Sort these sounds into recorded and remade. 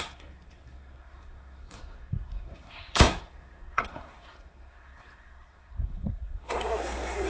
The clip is remade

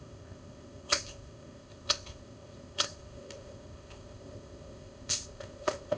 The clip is remade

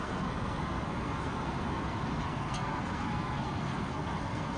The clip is remade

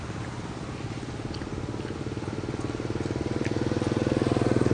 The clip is recorded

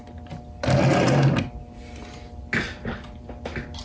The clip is recorded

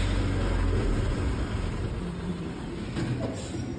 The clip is recorded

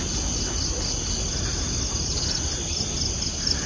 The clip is recorded